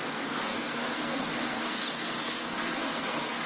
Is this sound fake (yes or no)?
yes